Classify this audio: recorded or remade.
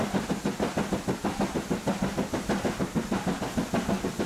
recorded